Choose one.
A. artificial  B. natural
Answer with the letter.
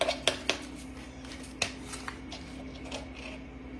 B